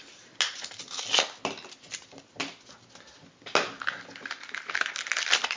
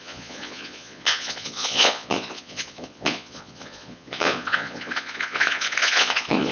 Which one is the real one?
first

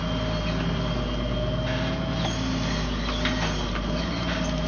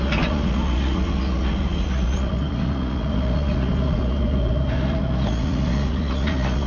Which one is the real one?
first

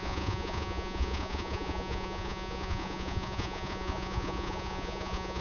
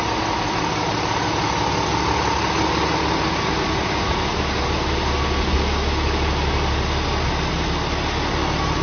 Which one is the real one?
second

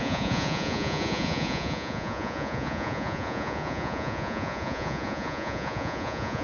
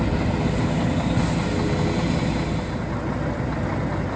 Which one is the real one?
second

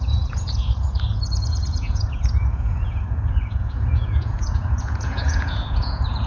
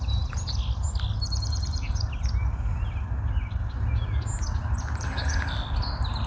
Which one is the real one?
second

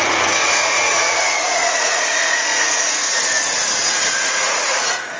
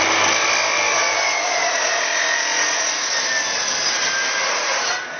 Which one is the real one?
second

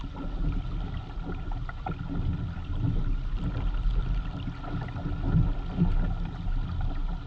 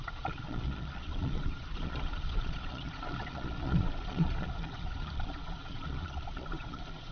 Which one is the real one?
first